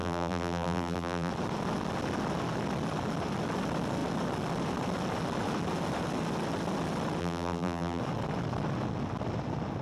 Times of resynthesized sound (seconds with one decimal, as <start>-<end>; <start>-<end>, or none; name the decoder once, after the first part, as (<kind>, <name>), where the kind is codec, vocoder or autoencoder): 0.0-1.3 (vocoder, BigVGAN v2); 7.2-8.0